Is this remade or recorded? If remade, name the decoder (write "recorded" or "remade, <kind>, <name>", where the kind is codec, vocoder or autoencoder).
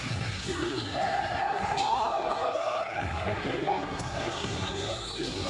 remade, codec, SNAC